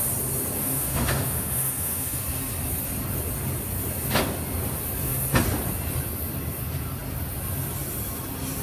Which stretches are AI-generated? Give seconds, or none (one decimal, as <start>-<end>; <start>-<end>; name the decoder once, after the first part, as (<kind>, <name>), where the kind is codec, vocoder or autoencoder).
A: 0.6-2.2 (autoencoder, DAC-VAE)